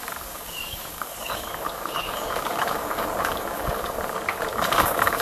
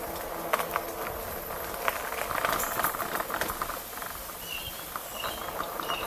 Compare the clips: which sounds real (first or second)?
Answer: second